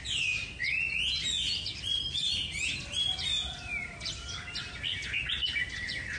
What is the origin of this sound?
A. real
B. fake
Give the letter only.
A